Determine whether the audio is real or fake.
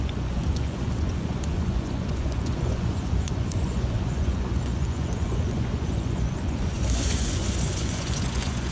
fake